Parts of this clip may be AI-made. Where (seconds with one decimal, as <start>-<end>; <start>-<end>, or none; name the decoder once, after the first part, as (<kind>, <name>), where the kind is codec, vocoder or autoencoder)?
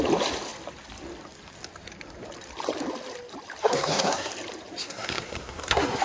3.6-4.3 (codec, SNAC); 4.8-6.0